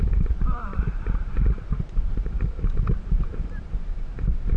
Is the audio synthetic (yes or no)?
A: yes